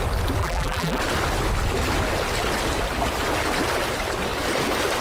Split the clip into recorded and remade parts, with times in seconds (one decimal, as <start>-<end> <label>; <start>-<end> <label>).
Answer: 0.0-0.4 recorded; 0.4-1.0 remade; 1.0-5.0 recorded